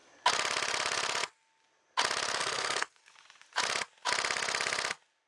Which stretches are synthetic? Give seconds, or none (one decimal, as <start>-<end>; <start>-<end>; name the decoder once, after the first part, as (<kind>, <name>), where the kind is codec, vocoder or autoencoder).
2.4-3.1 (codec, SNAC)